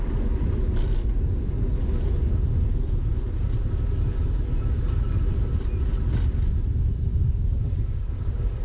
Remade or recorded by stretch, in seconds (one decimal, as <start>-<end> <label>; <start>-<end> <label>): 0.0-7.1 recorded; 7.1-8.6 remade

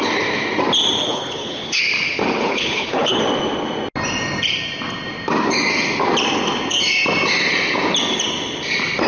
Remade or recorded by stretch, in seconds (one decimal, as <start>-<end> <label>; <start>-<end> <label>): 0.0-1.1 recorded; 1.1-1.8 remade; 1.8-2.4 recorded; 2.4-3.2 remade; 3.2-9.1 recorded